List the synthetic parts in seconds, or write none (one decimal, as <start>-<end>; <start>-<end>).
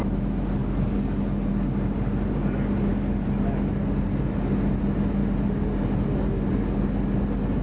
0.6-1.5